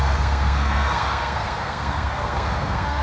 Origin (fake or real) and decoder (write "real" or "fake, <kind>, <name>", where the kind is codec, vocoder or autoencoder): fake, codec, SNAC